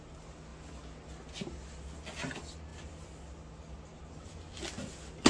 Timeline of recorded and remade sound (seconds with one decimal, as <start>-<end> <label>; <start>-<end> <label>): 0.0-5.3 recorded